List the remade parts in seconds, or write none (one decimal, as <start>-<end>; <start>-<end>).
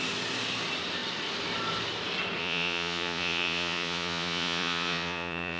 2.4-5.6